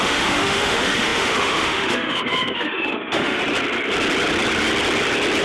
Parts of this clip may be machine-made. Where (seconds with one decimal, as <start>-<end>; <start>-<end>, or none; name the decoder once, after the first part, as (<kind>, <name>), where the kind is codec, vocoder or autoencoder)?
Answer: 0.0-3.4 (autoencoder, DAC-VAE)